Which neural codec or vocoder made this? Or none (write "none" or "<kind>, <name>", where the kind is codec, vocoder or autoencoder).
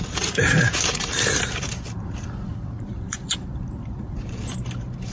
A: vocoder, BigVGAN v2